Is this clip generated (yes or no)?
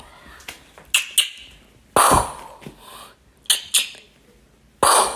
no